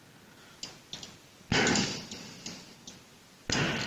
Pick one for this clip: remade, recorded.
recorded